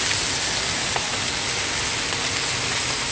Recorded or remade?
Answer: recorded